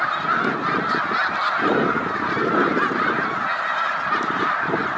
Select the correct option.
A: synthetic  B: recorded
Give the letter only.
B